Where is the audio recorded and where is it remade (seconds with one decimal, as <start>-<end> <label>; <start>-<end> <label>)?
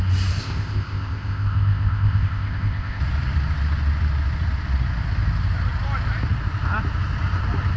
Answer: 0.0-0.4 recorded; 0.4-3.0 remade; 3.0-7.8 recorded